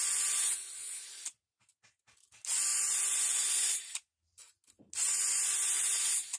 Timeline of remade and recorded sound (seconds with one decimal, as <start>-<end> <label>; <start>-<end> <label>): 0.0-6.4 recorded

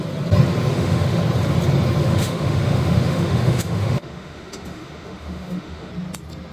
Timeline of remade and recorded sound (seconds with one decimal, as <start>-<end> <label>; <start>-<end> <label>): 0.0-0.7 recorded; 0.7-1.2 remade; 1.2-2.0 recorded; 2.0-5.9 remade; 5.9-6.5 recorded

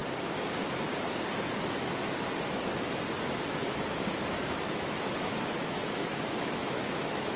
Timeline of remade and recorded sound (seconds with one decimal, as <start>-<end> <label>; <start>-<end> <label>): 0.0-4.1 recorded; 4.1-7.4 remade

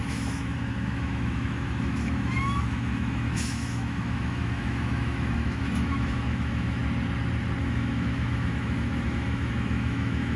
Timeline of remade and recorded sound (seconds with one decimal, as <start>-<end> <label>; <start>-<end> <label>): 0.0-6.8 remade; 6.8-7.6 recorded; 7.6-10.4 remade

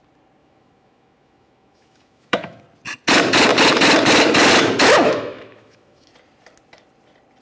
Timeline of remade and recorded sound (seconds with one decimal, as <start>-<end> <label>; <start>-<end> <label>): 0.0-0.4 recorded; 0.4-2.6 remade; 2.6-5.0 recorded; 5.0-6.1 remade; 6.1-7.4 recorded